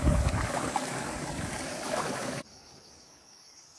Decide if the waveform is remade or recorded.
remade